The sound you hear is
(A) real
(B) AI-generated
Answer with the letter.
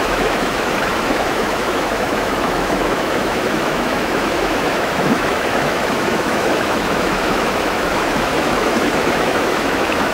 B